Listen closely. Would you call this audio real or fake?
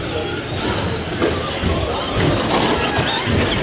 real